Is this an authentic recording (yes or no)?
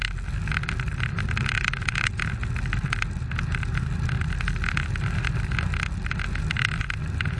yes